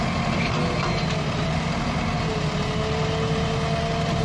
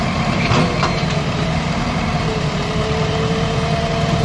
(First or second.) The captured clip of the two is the first